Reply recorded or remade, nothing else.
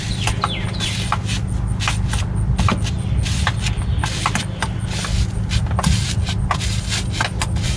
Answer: recorded